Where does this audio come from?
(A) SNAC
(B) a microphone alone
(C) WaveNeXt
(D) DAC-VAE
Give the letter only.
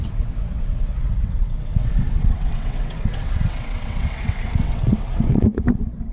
C